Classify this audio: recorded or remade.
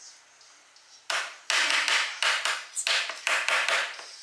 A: recorded